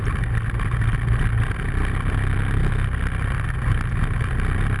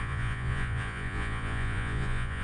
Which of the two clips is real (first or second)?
first